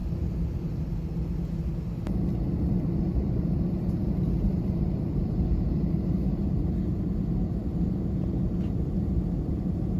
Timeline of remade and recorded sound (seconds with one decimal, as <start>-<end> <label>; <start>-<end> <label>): 0.0-3.0 recorded; 3.0-6.9 remade; 6.9-7.4 recorded; 7.4-10.0 remade